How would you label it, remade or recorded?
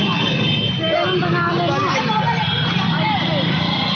recorded